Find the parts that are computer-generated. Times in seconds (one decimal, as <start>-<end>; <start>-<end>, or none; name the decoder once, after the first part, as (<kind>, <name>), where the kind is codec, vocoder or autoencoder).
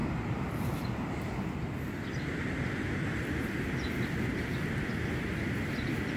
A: none